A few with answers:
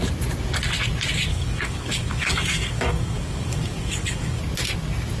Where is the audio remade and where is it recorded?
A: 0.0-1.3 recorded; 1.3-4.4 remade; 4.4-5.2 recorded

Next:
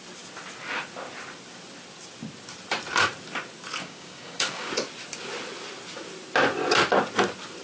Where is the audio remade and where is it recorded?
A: 0.0-3.8 recorded; 3.8-4.7 remade; 4.7-7.6 recorded

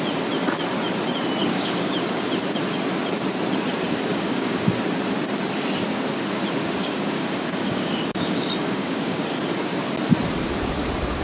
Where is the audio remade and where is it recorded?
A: 0.0-1.4 recorded; 1.4-1.9 remade; 1.9-4.1 recorded; 4.1-4.6 remade; 4.6-6.8 recorded; 6.8-9.2 remade; 9.2-11.2 recorded

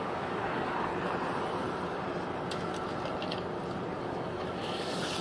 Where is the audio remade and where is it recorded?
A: 0.0-0.9 remade; 0.9-4.0 recorded; 4.0-5.2 remade

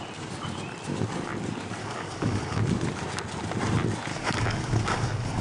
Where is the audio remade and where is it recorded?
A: 0.0-1.8 recorded; 1.8-2.6 remade; 2.6-4.1 recorded; 4.1-5.4 remade

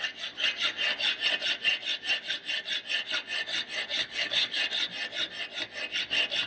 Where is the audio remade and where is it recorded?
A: 0.0-4.0 recorded; 4.0-4.6 remade; 4.6-6.5 recorded

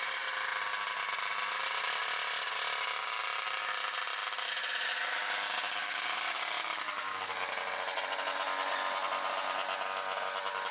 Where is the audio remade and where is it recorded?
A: 0.0-5.8 recorded; 5.8-7.3 remade; 7.3-10.7 recorded